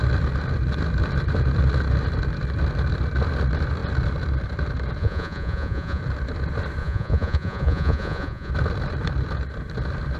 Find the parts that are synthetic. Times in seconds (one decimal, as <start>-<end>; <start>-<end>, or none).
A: 5.0-6.0; 6.8-8.5